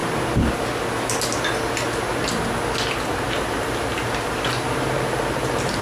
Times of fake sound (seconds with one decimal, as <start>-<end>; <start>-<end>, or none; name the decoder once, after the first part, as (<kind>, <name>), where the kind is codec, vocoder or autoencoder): none